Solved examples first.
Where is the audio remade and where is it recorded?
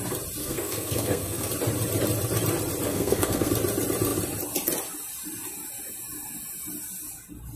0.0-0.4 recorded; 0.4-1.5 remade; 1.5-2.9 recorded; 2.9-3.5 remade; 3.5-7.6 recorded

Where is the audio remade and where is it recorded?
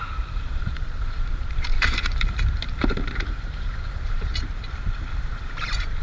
0.0-4.5 remade; 4.5-5.1 recorded; 5.1-6.0 remade